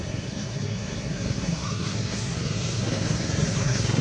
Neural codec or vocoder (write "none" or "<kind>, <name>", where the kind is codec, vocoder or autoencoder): codec, SNAC